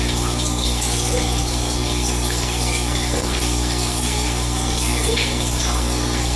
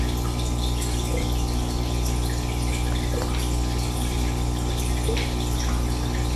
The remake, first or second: first